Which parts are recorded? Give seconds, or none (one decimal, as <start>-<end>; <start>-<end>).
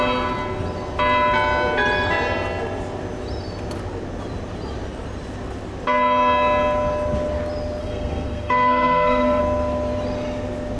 0.0-7.8; 9.4-10.8